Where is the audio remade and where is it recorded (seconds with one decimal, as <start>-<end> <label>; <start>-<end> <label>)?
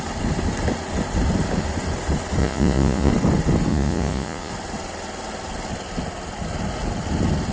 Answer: 0.0-2.4 recorded; 2.4-3.1 remade; 3.1-3.7 recorded; 3.7-4.5 remade; 4.5-7.5 recorded